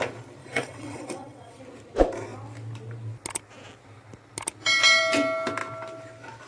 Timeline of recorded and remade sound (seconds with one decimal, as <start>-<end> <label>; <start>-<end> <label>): 0.0-0.4 recorded; 0.4-1.6 remade; 1.6-6.5 recorded